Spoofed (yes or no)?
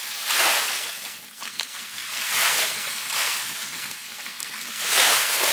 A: yes